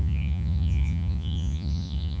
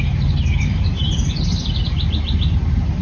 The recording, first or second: second